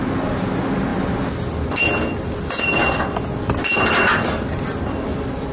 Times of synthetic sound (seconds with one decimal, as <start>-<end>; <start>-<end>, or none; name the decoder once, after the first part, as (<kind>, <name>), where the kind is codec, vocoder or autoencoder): none

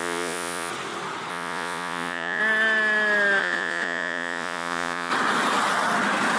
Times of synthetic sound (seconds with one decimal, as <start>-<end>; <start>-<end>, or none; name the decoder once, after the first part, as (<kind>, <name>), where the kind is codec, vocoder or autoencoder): 0.0-0.7 (vocoder, Vocos); 1.3-2.4; 3.4-5.1

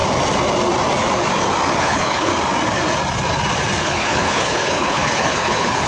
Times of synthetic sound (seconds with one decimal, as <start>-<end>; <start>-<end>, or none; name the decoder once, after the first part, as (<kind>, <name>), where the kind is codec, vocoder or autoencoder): 1.8-2.3 (codec, HILCodec); 3.8-5.9